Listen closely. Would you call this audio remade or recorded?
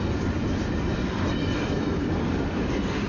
remade